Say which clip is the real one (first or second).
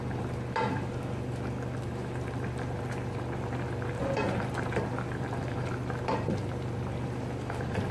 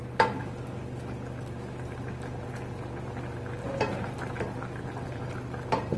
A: second